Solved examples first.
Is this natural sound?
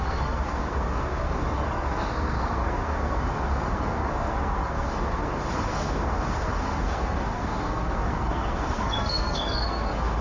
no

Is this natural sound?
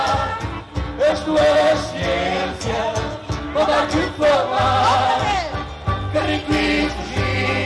yes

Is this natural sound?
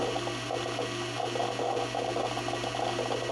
yes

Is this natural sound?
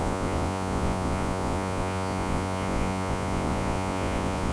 no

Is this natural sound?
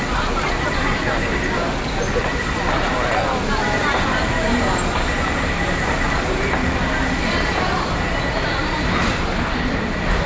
yes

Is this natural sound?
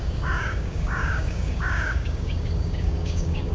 no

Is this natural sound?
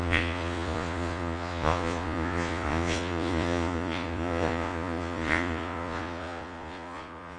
no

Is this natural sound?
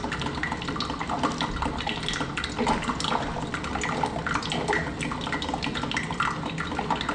yes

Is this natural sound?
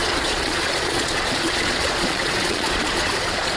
no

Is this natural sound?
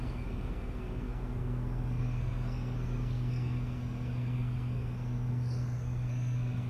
no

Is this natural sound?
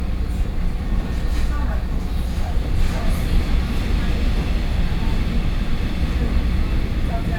yes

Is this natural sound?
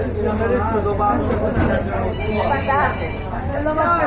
yes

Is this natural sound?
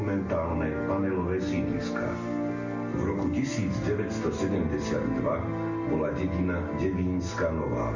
yes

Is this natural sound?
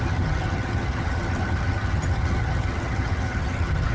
no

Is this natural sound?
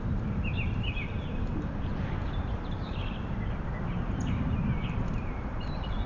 no